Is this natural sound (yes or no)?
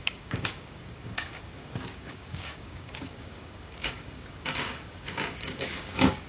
no